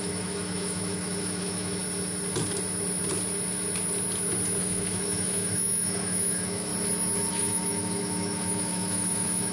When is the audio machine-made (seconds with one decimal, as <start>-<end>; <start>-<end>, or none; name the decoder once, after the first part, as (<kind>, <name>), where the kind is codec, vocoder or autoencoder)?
0.0-1.8 (autoencoder, DAC-VAE); 4.6-6.7; 7.3-9.5